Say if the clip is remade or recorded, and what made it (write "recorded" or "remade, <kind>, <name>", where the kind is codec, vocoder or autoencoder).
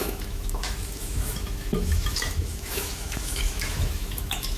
remade, autoencoder, DAC-VAE